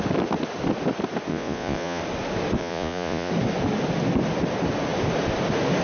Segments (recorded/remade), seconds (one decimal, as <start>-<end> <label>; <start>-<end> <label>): 0.0-1.3 recorded; 1.3-2.0 remade; 2.0-2.6 recorded; 2.6-3.3 remade; 3.3-5.8 recorded

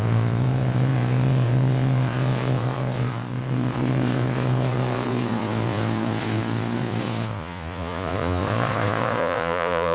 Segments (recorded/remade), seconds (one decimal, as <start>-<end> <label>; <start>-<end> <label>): 0.0-9.9 remade